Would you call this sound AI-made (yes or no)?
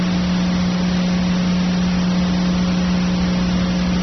no